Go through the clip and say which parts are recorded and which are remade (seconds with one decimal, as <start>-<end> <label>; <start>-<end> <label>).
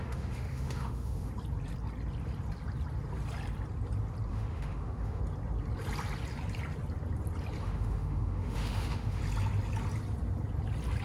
0.0-1.3 remade; 1.3-4.3 recorded; 4.3-5.2 remade; 5.2-7.6 recorded; 7.6-9.2 remade; 9.2-11.0 recorded